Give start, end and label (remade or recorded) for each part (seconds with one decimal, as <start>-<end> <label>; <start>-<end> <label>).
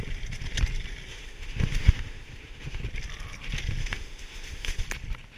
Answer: 0.0-1.1 recorded; 1.1-2.8 remade; 2.8-3.8 recorded; 3.8-4.8 remade; 4.8-5.4 recorded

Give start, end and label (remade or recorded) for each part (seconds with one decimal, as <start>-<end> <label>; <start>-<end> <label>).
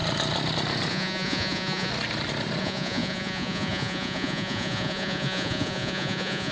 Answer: 0.0-0.9 recorded; 0.9-1.9 remade; 1.9-2.6 recorded; 2.6-6.5 remade